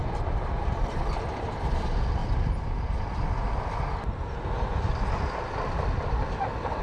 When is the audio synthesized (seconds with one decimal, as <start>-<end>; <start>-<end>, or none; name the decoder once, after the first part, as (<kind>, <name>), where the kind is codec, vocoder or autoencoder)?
0.0-2.2 (vocoder, BigVGAN v2); 5.0-6.8